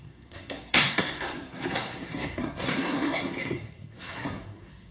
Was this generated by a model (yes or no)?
yes